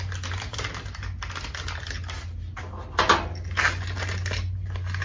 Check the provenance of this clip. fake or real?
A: real